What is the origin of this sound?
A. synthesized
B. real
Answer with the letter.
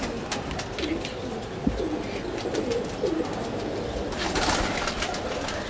B